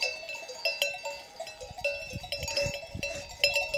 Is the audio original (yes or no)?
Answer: yes